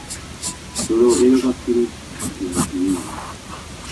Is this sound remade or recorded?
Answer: recorded